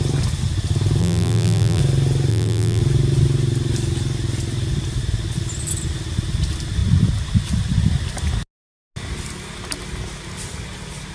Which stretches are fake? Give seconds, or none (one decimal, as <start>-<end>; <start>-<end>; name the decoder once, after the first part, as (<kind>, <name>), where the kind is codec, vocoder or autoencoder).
1.0-1.8 (vocoder, BigVGAN v2); 2.3-2.8